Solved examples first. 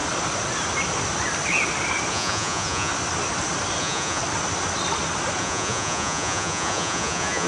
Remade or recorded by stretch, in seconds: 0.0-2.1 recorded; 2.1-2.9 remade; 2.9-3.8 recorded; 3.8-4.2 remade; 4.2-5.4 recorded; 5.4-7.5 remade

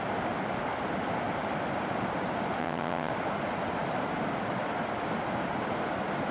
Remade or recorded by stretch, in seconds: 0.0-2.6 recorded; 2.6-3.1 remade; 3.1-6.3 recorded

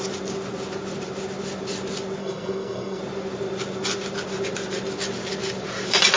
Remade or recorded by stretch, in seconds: 0.0-2.2 recorded; 2.2-3.0 remade; 3.0-6.2 recorded